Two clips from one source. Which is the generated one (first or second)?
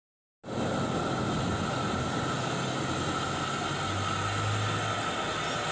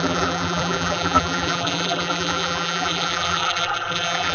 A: second